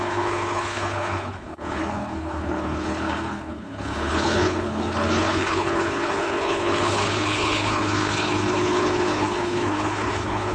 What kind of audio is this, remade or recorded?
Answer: remade